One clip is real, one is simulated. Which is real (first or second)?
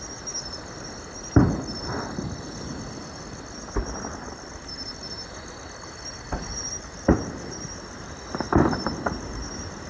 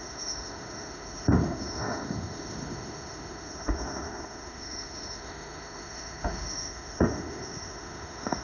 first